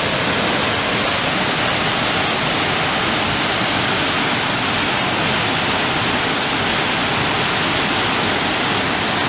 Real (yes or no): yes